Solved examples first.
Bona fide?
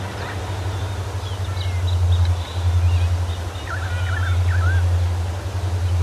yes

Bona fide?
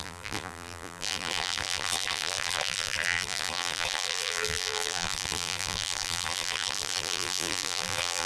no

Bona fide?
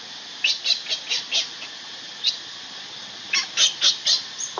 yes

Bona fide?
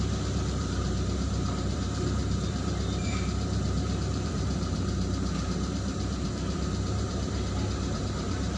no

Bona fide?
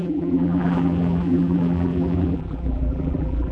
no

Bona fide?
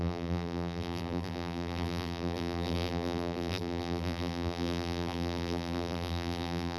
no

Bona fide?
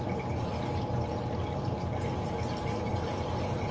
yes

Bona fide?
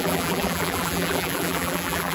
no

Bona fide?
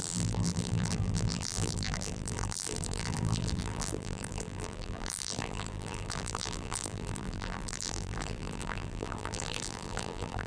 no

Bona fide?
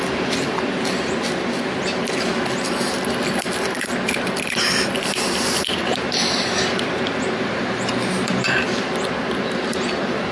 no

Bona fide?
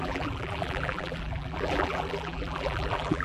no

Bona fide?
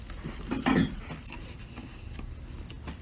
yes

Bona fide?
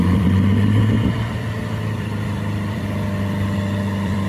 no